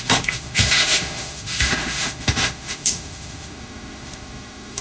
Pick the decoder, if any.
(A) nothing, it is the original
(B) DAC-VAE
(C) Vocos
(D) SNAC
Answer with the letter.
B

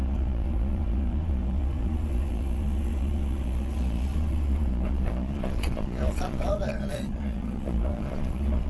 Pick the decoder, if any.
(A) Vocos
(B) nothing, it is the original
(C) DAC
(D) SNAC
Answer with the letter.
A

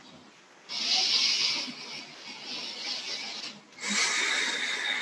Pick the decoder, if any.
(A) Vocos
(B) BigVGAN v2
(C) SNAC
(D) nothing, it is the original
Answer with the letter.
D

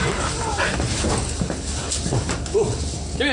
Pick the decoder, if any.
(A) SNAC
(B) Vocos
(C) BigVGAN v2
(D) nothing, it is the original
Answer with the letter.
D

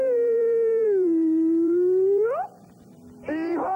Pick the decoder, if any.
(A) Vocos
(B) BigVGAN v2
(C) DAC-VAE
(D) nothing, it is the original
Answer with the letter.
B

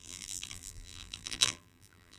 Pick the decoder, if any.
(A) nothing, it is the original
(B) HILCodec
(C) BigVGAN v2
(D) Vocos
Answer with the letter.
C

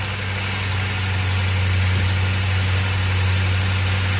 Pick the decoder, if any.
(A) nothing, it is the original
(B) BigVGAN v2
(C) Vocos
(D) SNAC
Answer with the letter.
A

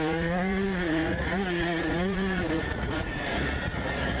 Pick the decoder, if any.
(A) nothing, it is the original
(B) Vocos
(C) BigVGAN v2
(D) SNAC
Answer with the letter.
B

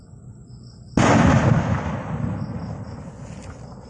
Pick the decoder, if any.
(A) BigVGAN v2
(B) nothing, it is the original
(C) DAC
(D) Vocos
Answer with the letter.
B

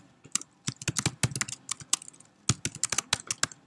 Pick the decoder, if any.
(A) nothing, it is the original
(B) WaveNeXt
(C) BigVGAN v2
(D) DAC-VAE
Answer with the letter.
A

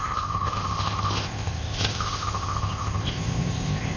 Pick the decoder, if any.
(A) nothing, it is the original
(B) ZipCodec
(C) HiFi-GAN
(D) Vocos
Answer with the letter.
B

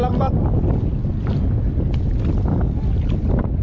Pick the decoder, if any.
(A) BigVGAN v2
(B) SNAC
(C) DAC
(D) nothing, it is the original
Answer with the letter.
D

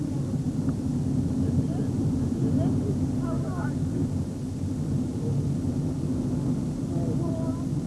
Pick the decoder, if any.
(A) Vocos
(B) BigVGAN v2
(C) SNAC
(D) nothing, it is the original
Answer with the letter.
D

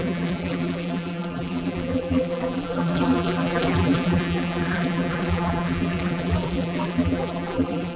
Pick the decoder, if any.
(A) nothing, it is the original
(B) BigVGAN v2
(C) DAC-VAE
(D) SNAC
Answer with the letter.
B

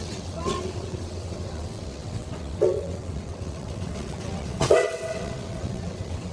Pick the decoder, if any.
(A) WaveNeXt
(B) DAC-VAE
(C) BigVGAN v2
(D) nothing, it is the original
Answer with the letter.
A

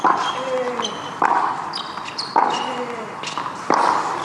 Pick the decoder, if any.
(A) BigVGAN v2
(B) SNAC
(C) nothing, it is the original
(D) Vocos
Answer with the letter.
C